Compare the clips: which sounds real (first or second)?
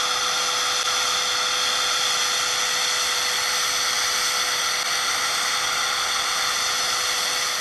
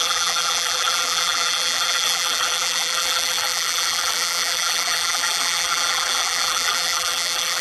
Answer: first